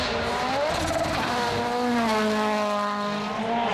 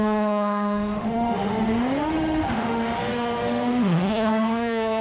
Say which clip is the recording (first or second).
first